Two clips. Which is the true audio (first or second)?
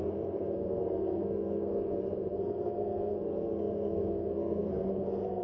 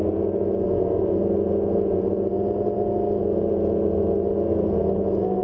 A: second